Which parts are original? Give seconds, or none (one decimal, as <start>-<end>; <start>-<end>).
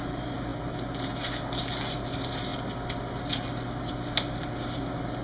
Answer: 0.0-5.2